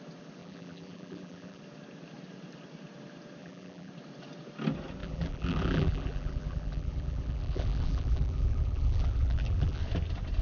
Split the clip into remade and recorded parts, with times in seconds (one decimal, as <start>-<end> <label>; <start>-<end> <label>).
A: 0.0-0.4 recorded; 0.4-1.6 remade; 1.6-3.4 recorded; 3.4-3.9 remade; 3.9-5.0 recorded; 5.0-9.8 remade; 9.8-10.4 recorded